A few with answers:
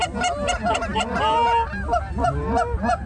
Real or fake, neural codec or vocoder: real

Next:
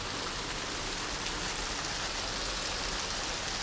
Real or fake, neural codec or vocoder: real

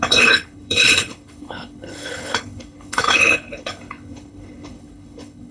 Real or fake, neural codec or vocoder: fake, codec, HILCodec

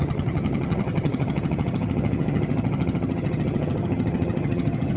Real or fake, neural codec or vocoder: fake, vocoder, HiFi-GAN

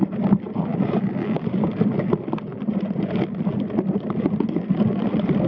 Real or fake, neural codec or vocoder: real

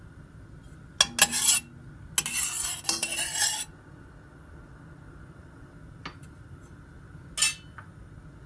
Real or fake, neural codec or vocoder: real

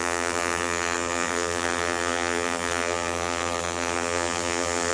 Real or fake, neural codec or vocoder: fake, vocoder, BigVGAN v2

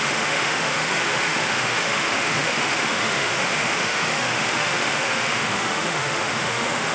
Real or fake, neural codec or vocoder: fake, autoencoder, DAC-VAE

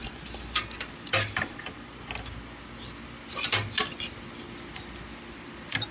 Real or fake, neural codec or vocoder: real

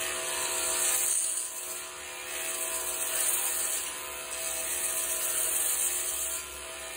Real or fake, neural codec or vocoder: real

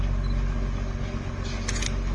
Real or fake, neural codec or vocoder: real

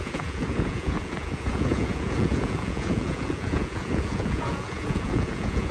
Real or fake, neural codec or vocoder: fake, vocoder, Vocos